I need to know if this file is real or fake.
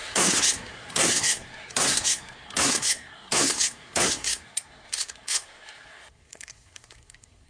fake